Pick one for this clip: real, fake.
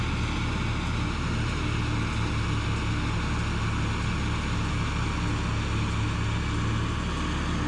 real